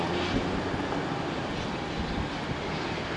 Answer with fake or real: real